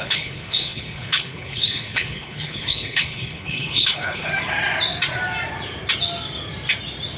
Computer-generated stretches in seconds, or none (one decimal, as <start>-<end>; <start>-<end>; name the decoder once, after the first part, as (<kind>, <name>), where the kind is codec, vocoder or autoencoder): 0.0-4.3 (codec, HILCodec)